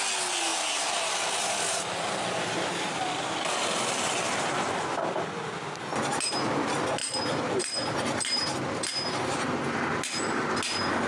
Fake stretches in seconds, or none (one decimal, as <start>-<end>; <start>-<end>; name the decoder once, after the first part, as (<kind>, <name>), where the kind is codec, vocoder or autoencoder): none